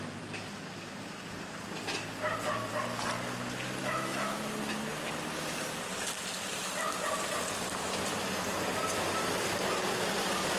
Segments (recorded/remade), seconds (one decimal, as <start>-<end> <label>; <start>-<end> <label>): 0.0-3.8 recorded; 3.8-4.4 remade; 4.4-10.6 recorded

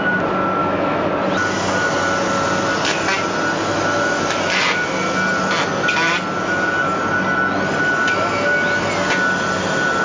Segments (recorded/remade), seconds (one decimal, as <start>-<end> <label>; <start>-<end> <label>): 0.0-0.6 recorded; 0.6-1.1 remade; 1.1-10.0 recorded

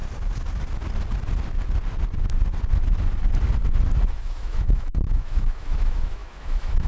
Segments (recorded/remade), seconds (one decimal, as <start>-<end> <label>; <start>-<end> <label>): 0.0-4.1 recorded; 4.1-6.9 remade

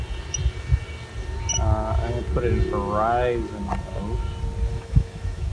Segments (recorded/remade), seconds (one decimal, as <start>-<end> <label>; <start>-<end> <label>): 0.0-4.7 recorded; 4.7-5.5 remade